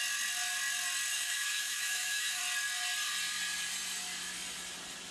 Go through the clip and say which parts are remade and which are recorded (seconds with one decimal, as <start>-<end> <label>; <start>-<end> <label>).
0.0-1.1 recorded; 1.1-2.4 remade; 2.4-5.1 recorded